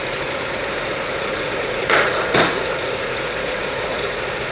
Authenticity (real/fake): fake